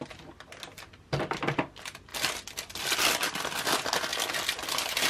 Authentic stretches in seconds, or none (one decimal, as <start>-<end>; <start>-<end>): 0.0-5.1